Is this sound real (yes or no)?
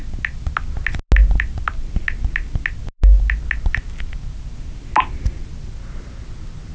yes